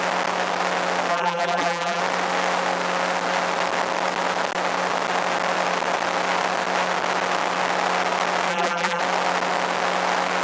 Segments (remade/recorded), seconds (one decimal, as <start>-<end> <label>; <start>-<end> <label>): 0.0-1.1 recorded; 1.1-2.0 remade; 2.0-8.5 recorded; 8.5-9.0 remade; 9.0-10.4 recorded

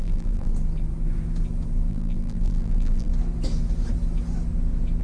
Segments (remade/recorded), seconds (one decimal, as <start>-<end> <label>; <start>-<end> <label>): 0.0-0.5 remade; 0.5-1.9 recorded; 1.9-3.1 remade; 3.1-5.0 recorded